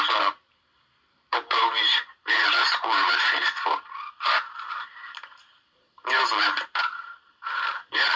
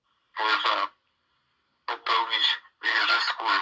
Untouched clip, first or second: second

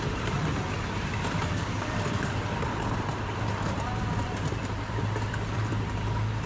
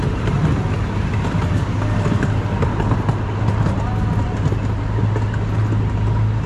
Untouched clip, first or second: second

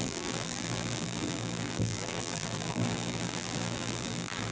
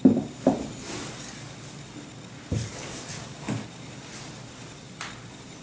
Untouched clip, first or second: second